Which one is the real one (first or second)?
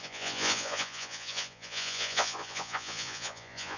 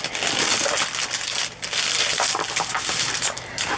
second